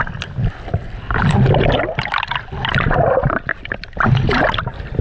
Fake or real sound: real